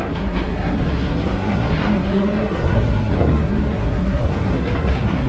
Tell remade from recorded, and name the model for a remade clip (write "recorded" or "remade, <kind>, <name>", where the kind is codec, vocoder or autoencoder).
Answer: remade, codec, SNAC